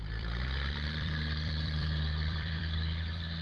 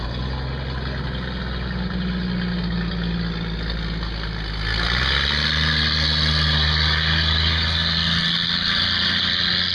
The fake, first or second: first